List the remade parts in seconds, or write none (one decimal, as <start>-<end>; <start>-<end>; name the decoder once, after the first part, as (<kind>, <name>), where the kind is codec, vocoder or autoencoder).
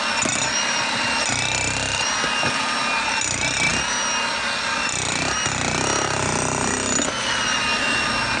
none